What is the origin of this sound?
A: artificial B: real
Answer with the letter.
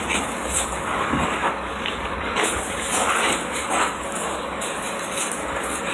A